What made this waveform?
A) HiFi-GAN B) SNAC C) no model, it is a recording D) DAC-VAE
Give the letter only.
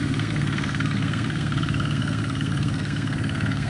B